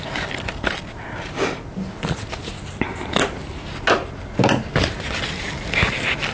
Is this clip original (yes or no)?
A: yes